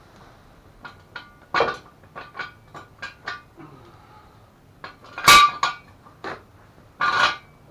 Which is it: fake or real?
real